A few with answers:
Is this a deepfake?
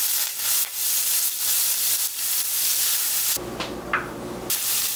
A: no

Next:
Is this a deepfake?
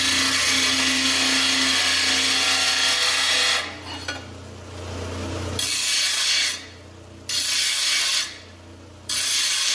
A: no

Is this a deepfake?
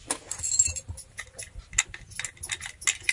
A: no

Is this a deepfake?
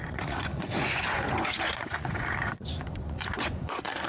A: yes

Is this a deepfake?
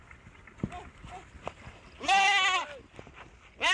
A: no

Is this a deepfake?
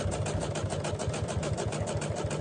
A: no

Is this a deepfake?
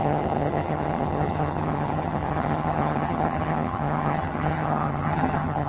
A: yes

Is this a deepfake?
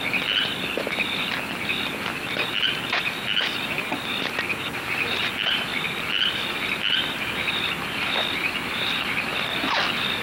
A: no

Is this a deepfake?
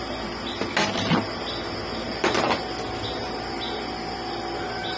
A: no